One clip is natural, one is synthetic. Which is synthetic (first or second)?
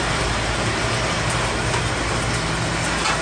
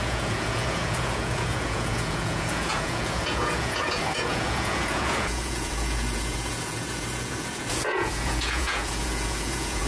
second